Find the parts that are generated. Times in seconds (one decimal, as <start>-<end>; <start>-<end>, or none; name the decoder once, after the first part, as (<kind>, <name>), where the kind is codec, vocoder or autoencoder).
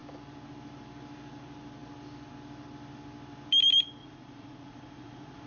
4.0-5.5 (vocoder, Vocos)